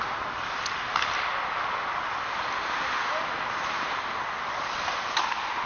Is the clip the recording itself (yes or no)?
yes